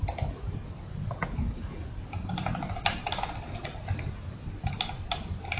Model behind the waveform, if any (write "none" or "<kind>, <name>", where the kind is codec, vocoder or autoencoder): none